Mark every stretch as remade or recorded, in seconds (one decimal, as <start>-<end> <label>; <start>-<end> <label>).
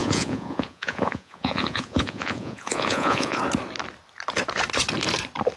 0.0-3.4 remade; 3.4-5.6 recorded